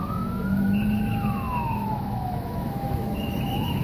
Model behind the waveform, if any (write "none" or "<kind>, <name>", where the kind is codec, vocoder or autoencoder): autoencoder, DAC-VAE